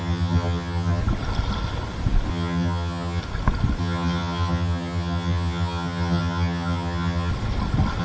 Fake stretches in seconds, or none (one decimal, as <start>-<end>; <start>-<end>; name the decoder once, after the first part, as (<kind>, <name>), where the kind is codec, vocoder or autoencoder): 0.0-1.0 (vocoder, HiFi-GAN); 2.3-3.2; 3.8-7.3